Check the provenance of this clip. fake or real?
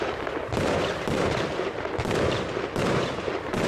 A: fake